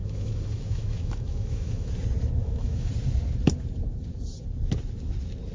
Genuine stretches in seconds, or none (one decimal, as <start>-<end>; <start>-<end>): 1.9-2.4; 2.9-5.5